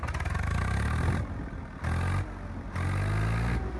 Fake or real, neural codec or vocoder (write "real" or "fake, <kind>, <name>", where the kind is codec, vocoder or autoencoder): real